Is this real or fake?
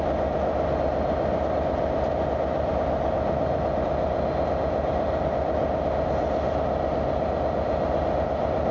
real